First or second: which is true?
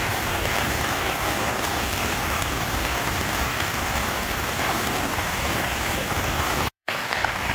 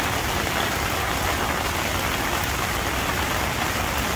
second